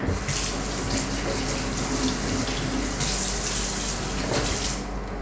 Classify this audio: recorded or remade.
recorded